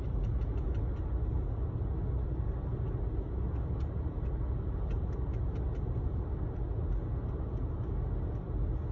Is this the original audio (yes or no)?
yes